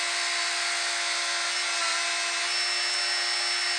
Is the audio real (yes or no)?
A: yes